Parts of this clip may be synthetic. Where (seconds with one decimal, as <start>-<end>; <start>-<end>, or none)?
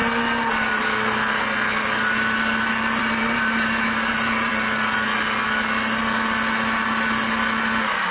3.0-4.5